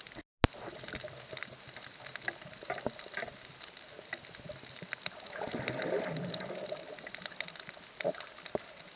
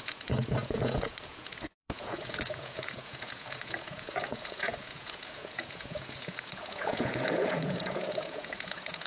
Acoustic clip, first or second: first